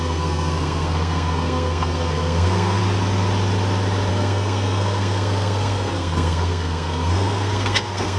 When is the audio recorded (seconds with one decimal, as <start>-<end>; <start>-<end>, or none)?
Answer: 2.8-4.1